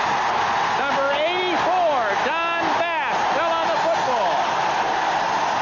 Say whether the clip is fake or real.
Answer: real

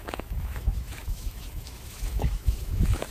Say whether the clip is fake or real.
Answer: fake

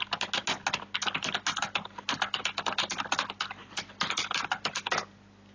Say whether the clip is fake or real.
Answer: real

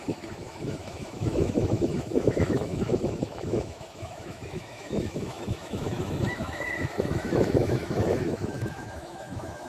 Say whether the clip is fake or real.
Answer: fake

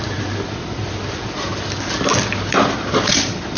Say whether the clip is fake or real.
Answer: real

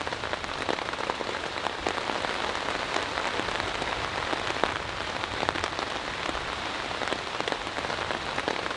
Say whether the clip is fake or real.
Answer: real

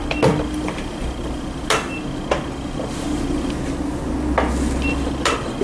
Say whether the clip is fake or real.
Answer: real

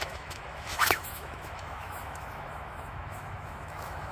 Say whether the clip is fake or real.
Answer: fake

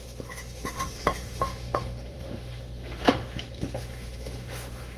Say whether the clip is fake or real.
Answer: fake